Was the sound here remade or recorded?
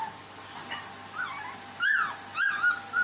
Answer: recorded